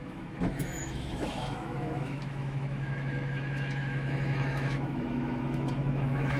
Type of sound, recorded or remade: remade